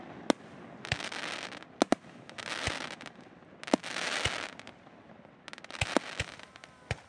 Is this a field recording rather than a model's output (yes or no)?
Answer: yes